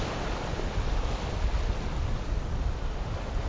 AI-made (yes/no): no